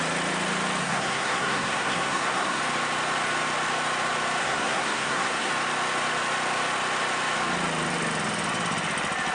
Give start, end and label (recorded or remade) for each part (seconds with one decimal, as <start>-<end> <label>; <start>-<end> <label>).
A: 0.0-0.8 recorded; 0.8-2.6 remade; 2.6-4.4 recorded; 4.4-5.5 remade; 5.5-9.3 recorded